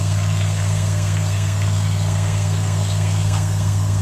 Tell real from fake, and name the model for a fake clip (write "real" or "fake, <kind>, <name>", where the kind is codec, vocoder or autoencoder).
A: fake, codec, SNAC